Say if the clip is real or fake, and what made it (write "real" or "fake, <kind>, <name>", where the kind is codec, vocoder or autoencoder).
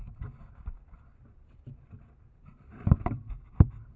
real